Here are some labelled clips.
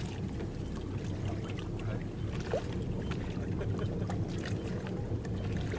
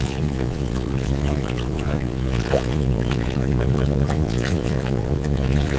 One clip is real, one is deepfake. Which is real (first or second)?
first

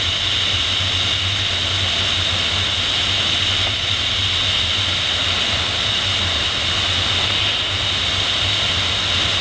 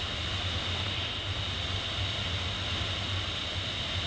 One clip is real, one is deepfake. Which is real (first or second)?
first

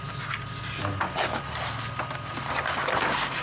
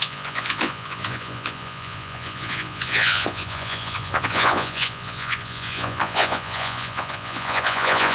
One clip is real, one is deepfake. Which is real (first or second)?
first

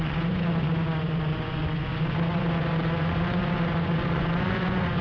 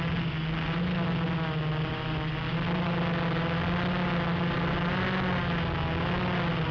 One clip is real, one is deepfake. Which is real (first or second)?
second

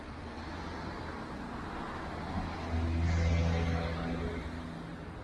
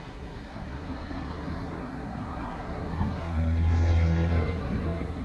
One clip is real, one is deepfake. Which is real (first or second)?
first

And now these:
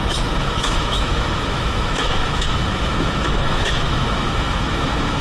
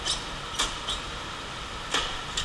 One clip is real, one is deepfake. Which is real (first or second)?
second